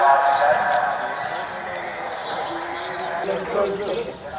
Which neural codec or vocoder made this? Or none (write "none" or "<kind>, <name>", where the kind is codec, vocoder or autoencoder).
none